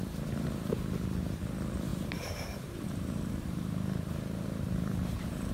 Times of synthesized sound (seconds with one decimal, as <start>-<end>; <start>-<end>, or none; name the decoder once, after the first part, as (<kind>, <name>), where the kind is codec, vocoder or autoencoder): 1.9-5.5 (vocoder, BigVGAN v2)